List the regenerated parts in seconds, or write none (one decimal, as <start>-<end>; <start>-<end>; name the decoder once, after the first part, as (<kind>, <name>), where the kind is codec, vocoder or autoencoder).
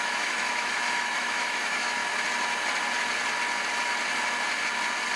0.0-2.0 (autoencoder, DAC-VAE)